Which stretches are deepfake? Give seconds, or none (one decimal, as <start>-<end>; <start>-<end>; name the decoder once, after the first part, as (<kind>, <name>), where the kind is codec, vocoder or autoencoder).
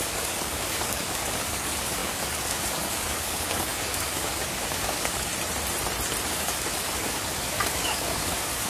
0.0-5.3 (codec, DAC); 6.3-8.7